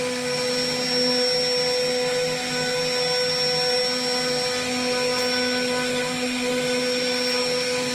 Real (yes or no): yes